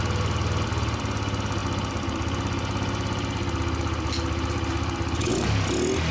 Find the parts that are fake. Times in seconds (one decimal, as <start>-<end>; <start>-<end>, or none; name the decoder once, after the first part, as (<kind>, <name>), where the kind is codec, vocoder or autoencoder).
none